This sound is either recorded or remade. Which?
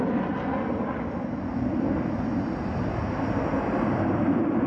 recorded